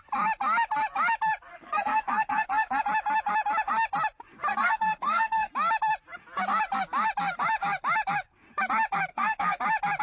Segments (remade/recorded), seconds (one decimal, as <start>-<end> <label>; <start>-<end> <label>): 0.0-1.5 recorded; 1.5-2.8 remade; 2.8-4.5 recorded; 4.5-5.5 remade; 5.5-9.1 recorded; 9.1-9.6 remade; 9.6-10.0 recorded